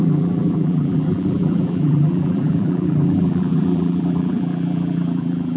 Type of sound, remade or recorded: remade